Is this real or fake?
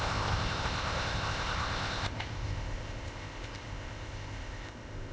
fake